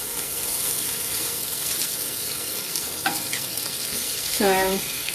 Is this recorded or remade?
remade